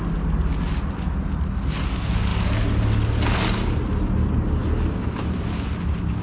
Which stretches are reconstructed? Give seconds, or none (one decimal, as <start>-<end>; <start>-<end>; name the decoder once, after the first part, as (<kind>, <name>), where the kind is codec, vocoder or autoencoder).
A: none